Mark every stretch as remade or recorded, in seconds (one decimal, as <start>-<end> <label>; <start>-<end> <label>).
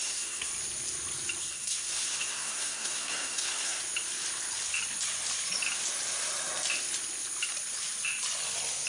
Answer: 0.0-0.5 remade; 0.5-1.4 recorded; 1.4-3.8 remade; 3.8-8.9 recorded